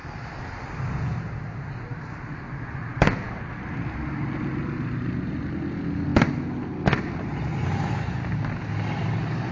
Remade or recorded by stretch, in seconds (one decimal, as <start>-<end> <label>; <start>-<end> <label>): 0.0-2.3 remade; 2.3-9.5 recorded